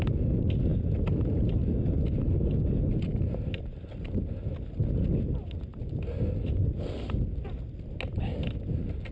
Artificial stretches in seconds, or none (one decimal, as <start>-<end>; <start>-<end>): none